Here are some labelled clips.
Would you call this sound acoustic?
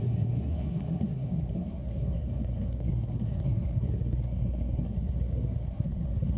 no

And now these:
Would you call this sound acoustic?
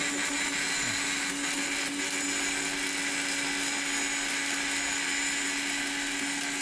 yes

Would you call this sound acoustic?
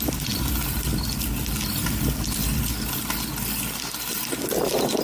yes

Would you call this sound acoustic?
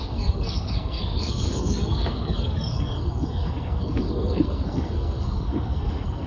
no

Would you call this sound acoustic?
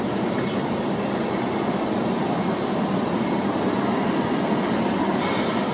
yes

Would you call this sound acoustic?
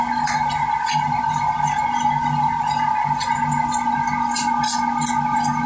yes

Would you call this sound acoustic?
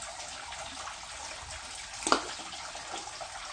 yes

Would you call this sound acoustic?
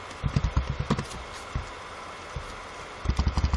yes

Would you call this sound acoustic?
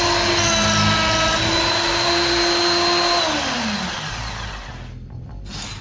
yes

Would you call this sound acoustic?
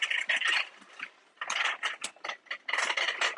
yes